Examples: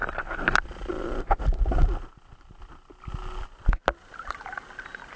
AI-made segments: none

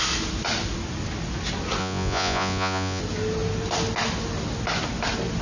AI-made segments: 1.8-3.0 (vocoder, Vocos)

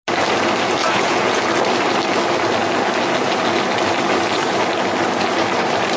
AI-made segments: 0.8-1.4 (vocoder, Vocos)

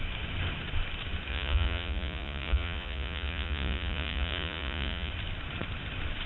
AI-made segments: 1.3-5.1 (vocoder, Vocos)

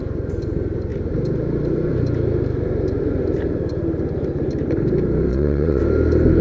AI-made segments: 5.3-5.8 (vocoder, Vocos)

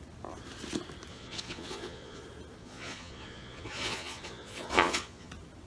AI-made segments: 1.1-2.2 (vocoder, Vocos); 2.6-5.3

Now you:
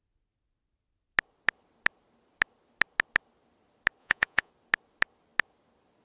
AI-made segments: 4.0-4.5 (vocoder, Vocos)